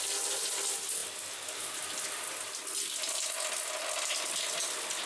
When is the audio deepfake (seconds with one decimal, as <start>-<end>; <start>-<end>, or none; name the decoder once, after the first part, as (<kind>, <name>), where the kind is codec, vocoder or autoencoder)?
none